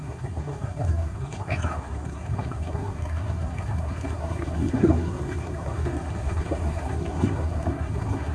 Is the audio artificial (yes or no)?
yes